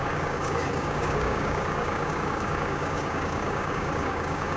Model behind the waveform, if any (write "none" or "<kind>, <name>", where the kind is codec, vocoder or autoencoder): codec, DAC